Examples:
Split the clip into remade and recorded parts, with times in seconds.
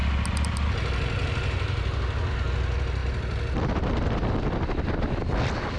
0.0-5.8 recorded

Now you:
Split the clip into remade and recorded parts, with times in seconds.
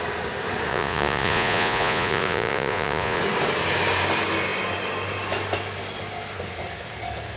0.0-0.7 recorded; 0.7-3.2 remade; 3.2-7.4 recorded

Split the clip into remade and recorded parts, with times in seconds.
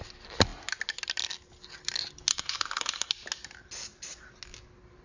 0.0-2.3 recorded; 2.3-3.1 remade; 3.1-5.0 recorded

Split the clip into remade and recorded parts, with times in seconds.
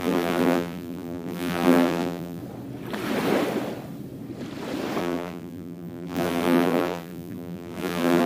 0.0-2.4 remade; 2.4-5.0 recorded; 5.0-8.3 remade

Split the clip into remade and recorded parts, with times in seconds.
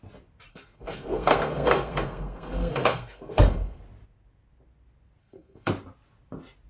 0.0-0.5 recorded; 0.5-3.8 remade; 3.8-5.2 recorded; 5.2-5.7 remade; 5.7-6.7 recorded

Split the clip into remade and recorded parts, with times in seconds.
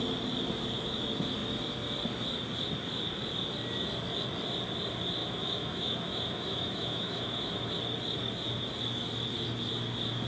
0.0-5.2 recorded; 5.2-7.7 remade; 7.7-10.3 recorded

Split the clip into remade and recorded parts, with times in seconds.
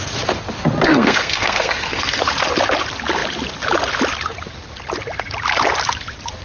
0.0-0.9 recorded; 0.9-2.2 remade; 2.2-6.4 recorded